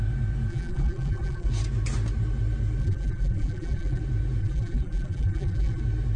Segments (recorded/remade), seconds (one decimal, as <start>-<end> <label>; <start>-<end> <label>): 0.0-0.5 recorded; 0.5-1.5 remade; 1.5-2.8 recorded; 2.8-4.0 remade; 4.0-4.4 recorded; 4.4-5.8 remade; 5.8-6.2 recorded